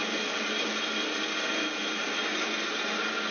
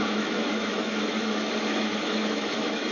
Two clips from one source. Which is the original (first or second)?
first